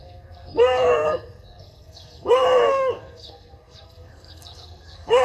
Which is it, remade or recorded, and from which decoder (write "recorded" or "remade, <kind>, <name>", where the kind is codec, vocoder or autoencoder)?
remade, codec, SNAC